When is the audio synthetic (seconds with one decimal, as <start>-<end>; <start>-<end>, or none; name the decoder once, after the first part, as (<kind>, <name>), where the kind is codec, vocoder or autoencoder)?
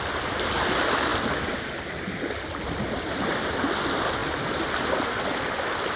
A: none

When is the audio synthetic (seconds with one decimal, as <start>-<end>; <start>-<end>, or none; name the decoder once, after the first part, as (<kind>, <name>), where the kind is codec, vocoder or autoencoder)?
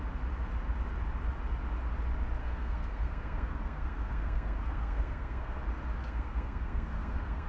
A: 2.4-5.6 (codec, SNAC); 6.0-7.5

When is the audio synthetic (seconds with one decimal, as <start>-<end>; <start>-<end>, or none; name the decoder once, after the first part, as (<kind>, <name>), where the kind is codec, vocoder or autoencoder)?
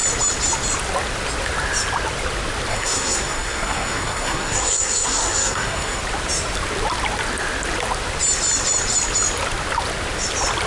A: 2.7-6.0 (codec, SNAC)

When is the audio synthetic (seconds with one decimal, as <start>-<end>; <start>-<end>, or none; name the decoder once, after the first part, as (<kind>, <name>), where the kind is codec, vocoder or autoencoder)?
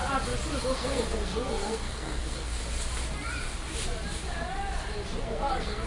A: 0.6-2.6 (codec, SNAC); 5.2-5.9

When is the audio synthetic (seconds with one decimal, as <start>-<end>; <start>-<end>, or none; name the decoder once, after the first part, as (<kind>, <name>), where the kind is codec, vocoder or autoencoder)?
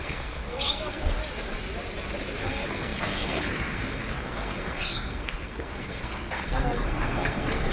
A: 0.0-1.2 (codec, SNAC); 2.4-7.7